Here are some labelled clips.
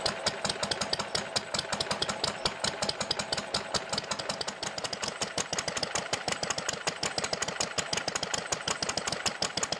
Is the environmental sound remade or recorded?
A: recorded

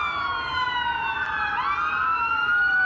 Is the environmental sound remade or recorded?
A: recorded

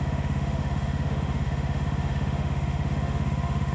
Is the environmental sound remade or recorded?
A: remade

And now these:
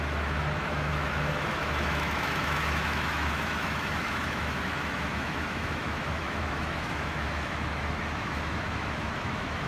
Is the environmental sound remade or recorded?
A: remade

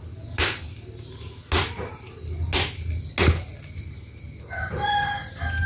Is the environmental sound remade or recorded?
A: recorded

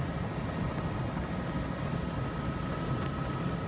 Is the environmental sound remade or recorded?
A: recorded